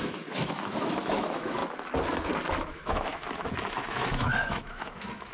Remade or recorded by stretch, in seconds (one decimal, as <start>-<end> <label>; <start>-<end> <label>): 0.0-1.6 remade; 1.6-2.5 recorded; 2.5-5.3 remade